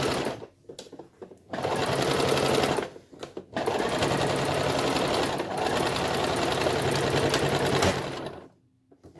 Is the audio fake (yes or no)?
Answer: no